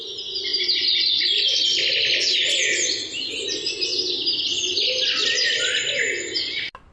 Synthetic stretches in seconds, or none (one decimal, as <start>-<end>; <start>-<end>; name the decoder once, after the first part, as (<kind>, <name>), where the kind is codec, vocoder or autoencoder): none